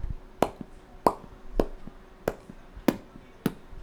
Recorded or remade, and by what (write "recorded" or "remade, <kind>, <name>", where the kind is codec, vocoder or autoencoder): recorded